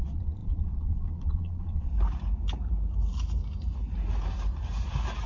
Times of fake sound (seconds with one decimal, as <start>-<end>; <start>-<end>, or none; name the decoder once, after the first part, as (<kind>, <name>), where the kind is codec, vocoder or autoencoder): 0.0-1.9 (vocoder, Vocos)